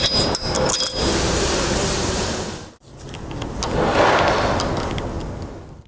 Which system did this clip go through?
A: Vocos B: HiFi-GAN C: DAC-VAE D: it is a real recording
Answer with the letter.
D